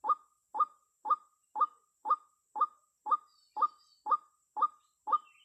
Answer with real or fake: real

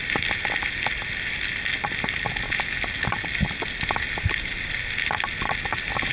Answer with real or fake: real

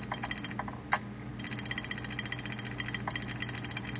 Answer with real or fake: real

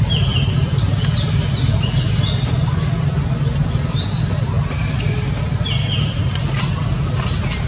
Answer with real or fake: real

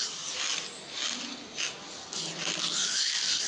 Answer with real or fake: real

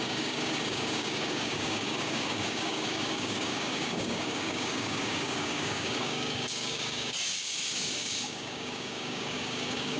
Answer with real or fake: fake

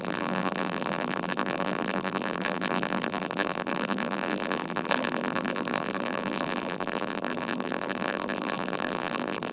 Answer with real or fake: fake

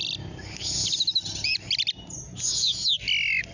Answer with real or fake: real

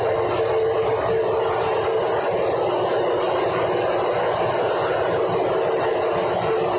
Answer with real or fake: real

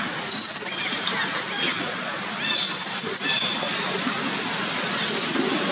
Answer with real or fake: real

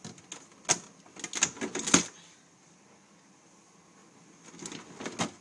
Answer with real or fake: real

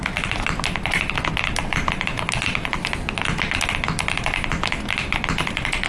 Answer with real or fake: real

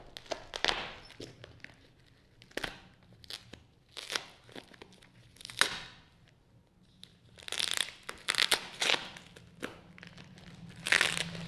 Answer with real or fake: real